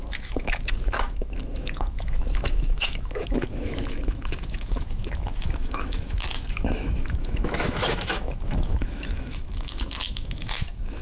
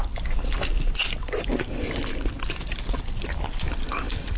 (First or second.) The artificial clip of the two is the first